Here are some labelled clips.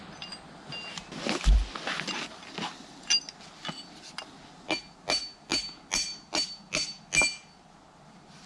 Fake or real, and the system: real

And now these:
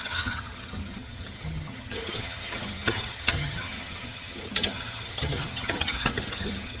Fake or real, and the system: fake, vocoder, HiFi-GAN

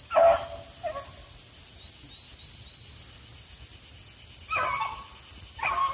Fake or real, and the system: real